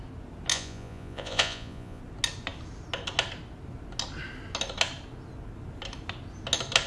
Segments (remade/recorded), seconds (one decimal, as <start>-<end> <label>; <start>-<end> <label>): 0.0-0.5 recorded; 0.5-2.0 remade; 2.0-6.9 recorded